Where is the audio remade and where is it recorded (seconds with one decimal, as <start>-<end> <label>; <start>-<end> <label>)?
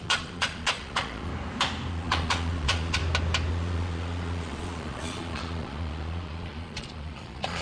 0.0-1.3 remade; 1.3-1.9 recorded; 1.9-3.0 remade; 3.0-3.5 recorded; 3.5-7.6 remade